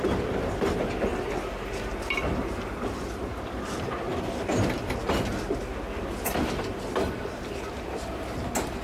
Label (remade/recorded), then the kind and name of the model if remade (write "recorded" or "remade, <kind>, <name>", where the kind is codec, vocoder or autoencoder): recorded